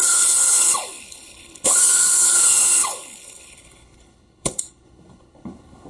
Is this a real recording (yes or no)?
no